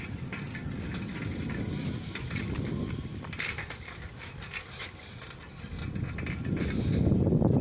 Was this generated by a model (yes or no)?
no